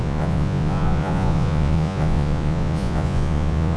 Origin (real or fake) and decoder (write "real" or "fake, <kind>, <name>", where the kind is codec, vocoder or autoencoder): fake, vocoder, Vocos